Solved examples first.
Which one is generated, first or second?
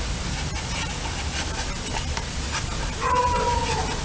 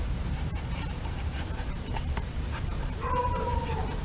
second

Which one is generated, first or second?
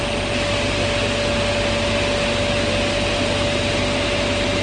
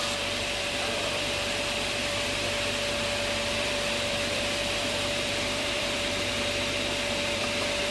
second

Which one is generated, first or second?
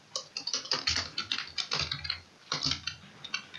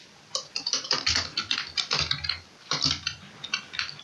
second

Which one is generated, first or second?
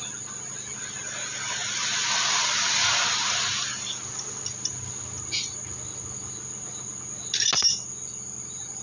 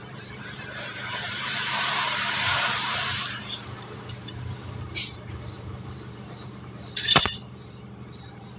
second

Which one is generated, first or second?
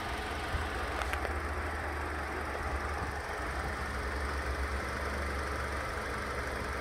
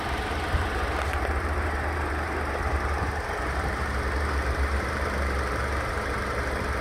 second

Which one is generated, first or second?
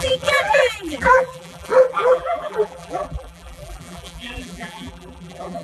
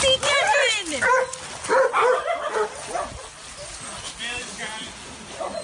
first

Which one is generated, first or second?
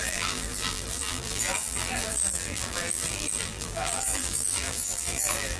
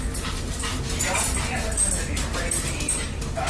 first